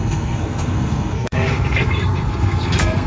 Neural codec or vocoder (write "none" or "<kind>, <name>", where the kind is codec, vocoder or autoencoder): codec, SNAC